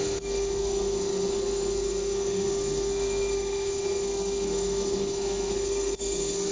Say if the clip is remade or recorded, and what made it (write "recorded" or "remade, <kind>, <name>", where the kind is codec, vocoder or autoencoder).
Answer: remade, codec, SNAC